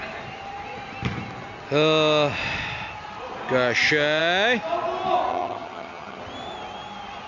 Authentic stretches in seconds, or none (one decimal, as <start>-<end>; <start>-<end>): 0.0-5.3; 6.2-7.3